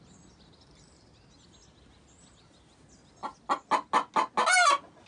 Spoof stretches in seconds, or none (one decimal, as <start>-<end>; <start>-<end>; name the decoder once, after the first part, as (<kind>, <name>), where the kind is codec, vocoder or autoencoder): none